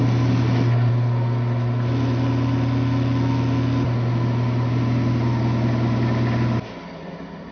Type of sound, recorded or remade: recorded